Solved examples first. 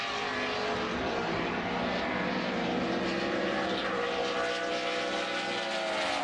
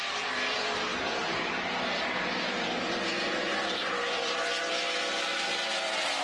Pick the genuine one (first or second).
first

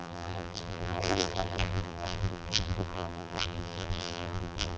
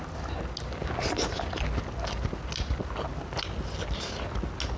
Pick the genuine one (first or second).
second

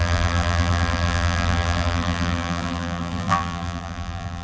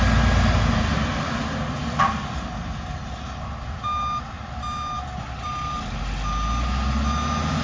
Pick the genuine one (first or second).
second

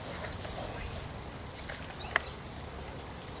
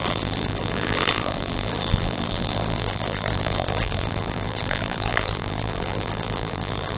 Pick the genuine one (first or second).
first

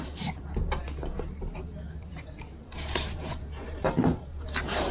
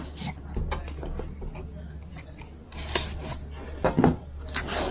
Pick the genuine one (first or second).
second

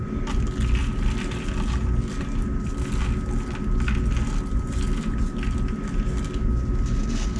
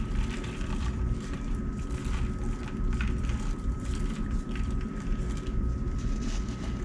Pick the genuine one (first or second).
first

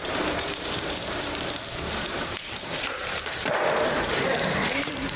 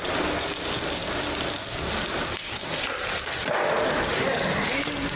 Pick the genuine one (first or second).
second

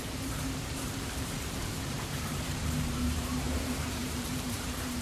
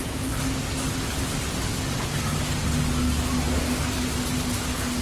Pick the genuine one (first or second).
second